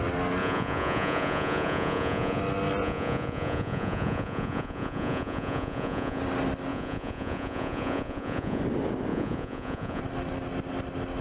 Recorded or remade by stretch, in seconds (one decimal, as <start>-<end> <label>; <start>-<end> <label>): 0.0-0.4 recorded; 0.4-2.4 remade; 2.4-2.8 recorded; 2.8-6.2 remade; 6.2-6.7 recorded; 6.7-8.6 remade; 8.6-9.1 recorded; 9.1-10.0 remade; 10.0-11.2 recorded